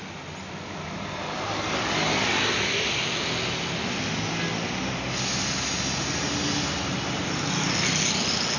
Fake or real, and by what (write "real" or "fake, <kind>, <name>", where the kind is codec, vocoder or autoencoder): real